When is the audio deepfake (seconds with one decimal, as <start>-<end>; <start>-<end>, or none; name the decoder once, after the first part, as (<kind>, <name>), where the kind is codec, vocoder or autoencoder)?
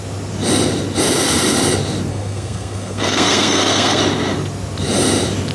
2.1-4.0 (codec, SNAC)